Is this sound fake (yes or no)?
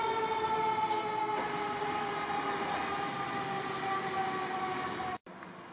no